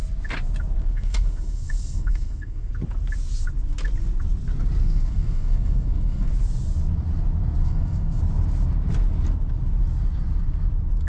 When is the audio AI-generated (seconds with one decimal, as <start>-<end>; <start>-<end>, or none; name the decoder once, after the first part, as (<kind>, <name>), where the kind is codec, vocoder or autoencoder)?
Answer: 0.8-2.7 (codec, SNAC); 4.8-6.3; 7.6-8.2